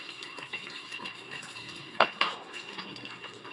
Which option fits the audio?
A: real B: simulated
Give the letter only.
B